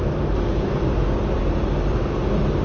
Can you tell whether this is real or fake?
fake